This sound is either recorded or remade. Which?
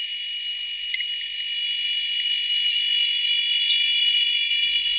recorded